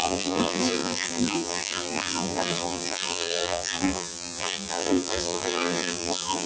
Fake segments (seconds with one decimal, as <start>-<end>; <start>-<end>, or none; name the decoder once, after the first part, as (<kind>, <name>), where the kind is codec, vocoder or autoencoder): 0.0-6.5 (vocoder, BigVGAN v2)